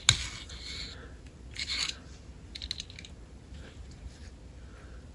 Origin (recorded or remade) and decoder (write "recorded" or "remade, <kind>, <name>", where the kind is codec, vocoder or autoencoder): recorded